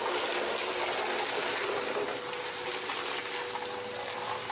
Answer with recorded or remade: recorded